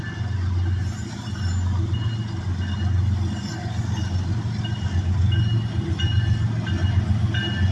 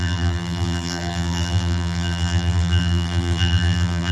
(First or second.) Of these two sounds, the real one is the first